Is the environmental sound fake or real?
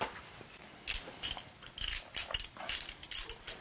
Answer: real